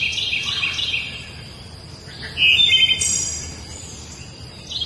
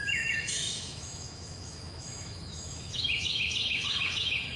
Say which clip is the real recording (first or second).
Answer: first